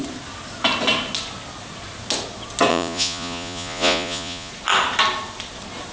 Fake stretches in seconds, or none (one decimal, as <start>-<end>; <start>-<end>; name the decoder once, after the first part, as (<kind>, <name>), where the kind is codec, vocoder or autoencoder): 2.7-4.5 (vocoder, Vocos)